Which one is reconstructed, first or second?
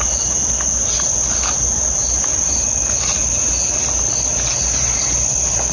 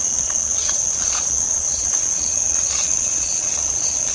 second